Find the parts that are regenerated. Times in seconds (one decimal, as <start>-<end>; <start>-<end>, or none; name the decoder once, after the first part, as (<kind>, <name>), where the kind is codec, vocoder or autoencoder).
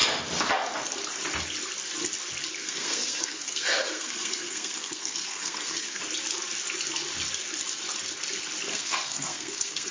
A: 2.6-6.0 (codec, SNAC); 8.7-9.9